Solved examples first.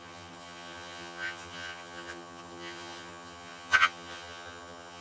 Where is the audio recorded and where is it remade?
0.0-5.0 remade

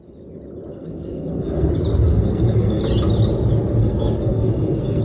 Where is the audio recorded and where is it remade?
0.0-0.7 recorded; 0.7-1.7 remade; 1.7-2.1 recorded; 2.1-2.8 remade; 2.8-3.8 recorded; 3.8-5.0 remade

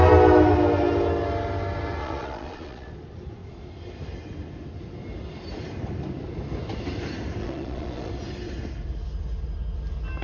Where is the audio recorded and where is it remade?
0.0-2.0 recorded; 2.0-2.9 remade; 2.9-7.4 recorded; 7.4-8.1 remade; 8.1-10.2 recorded